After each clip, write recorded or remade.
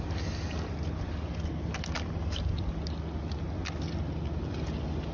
recorded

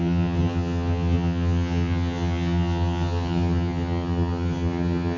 remade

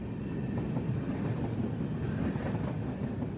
recorded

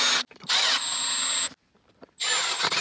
recorded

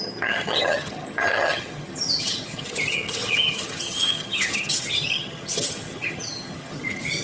remade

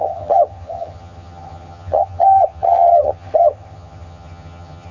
remade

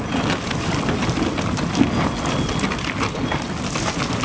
recorded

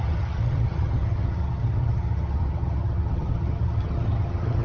remade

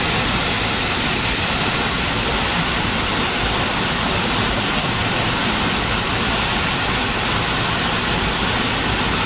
recorded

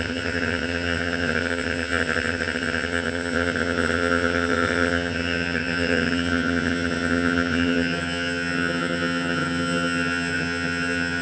remade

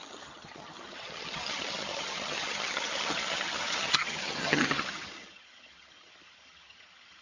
remade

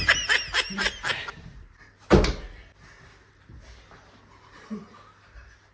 recorded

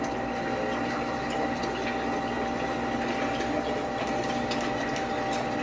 recorded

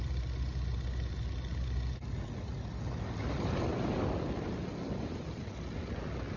recorded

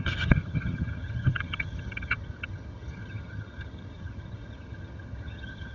remade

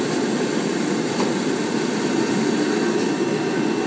recorded